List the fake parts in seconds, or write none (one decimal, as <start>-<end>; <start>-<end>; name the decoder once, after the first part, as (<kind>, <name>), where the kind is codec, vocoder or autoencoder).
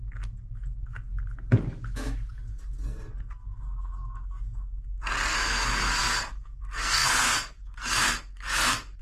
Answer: 0.0-1.1 (codec, SNAC); 2.5-9.0